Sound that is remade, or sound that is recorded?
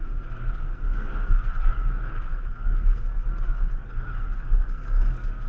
remade